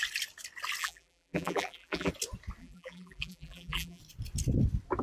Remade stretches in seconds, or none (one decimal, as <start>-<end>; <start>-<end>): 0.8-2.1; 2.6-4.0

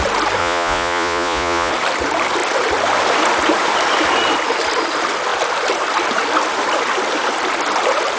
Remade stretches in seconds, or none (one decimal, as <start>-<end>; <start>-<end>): 0.4-1.7

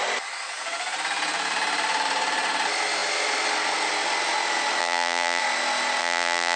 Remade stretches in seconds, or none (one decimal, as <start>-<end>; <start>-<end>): 4.8-5.4; 6.0-6.6

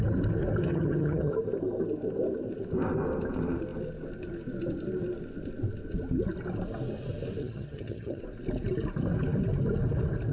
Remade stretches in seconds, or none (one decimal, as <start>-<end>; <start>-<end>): 0.6-1.3; 7.4-8.2

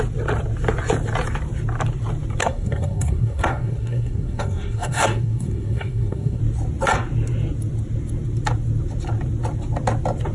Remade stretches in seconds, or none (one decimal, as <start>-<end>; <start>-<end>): 2.4-6.4

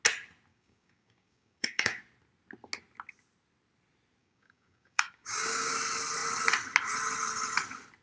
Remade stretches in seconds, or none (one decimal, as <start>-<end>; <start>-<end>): 0.5-2.0; 4.2-5.7

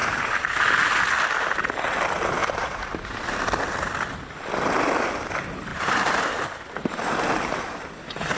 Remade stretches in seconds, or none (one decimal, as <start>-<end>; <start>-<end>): 0.0-0.5; 2.4-3.1; 5.7-7.9

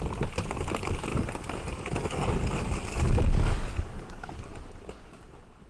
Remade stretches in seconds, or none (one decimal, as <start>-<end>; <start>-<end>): 1.1-4.5